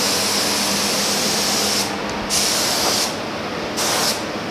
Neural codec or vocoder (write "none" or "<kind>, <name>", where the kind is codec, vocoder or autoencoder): none